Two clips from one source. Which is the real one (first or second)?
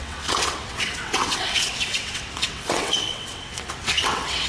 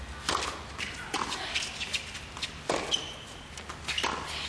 second